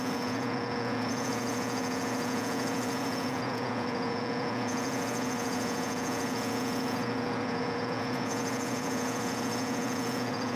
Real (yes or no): no